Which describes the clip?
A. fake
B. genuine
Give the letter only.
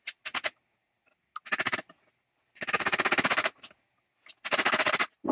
B